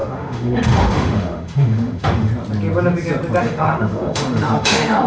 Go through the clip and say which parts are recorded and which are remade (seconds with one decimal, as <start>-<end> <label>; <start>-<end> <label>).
0.0-2.3 remade; 2.3-3.4 recorded; 3.4-5.1 remade